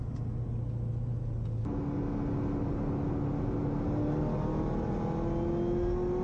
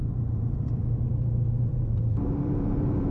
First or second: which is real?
first